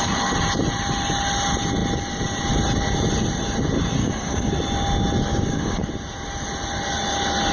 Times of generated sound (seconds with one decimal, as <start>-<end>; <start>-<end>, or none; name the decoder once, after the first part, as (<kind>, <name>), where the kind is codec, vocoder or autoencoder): 4.0-4.5 (codec, DAC); 5.3-5.9